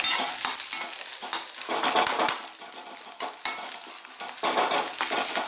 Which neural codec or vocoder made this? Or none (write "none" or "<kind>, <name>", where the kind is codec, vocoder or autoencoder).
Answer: none